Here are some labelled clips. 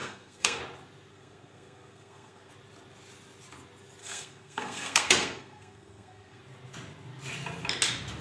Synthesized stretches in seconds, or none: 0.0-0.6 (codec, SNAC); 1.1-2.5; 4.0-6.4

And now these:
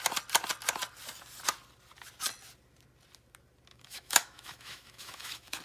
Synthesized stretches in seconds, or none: 3.7-5.6 (autoencoder, DAC-VAE)

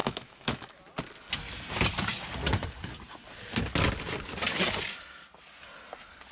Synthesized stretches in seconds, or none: 0.0-0.8 (autoencoder, DAC-VAE)

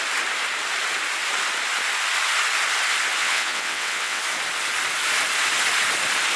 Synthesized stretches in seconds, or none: 3.2-4.2 (vocoder, WaveNeXt)

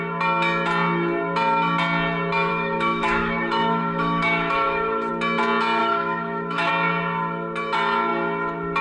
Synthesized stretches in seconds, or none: 2.5-5.1 (autoencoder, DAC-VAE); 5.8-6.7

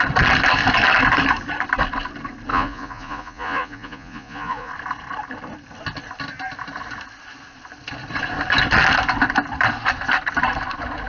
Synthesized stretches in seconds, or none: 2.5-4.7 (vocoder, Vocos)

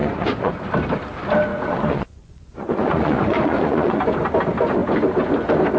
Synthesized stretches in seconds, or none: 0.0-0.5 (vocoder, Vocos); 1.5-4.0

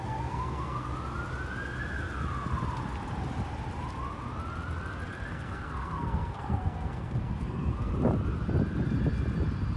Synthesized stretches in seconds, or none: 0.0-0.9 (codec, SNAC); 5.3-7.9